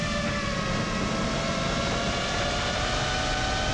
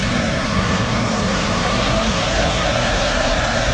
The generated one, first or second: second